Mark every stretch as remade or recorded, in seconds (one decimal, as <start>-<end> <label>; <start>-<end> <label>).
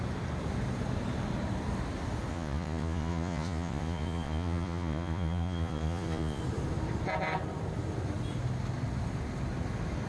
0.0-2.3 recorded; 2.3-6.4 remade; 6.4-10.1 recorded